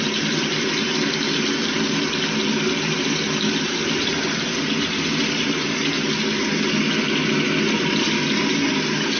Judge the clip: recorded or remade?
recorded